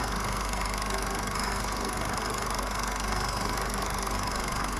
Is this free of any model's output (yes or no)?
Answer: no